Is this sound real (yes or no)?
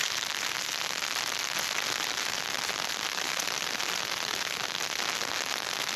yes